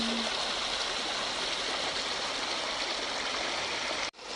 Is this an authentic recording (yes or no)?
yes